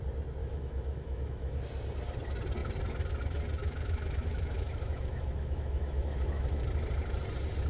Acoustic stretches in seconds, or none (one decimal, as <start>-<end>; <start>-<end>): 0.0-0.4; 1.6-3.6; 6.6-7.7